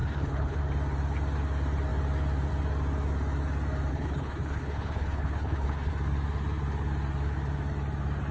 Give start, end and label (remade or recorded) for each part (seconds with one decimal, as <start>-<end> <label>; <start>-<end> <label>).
0.0-0.6 remade; 0.6-3.9 recorded; 3.9-5.9 remade; 5.9-8.3 recorded